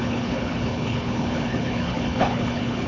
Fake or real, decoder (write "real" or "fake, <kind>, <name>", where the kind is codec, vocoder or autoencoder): fake, codec, HILCodec